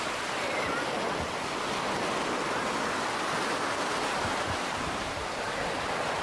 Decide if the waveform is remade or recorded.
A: remade